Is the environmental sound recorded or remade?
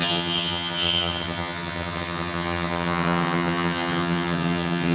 remade